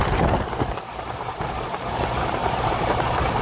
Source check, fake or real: fake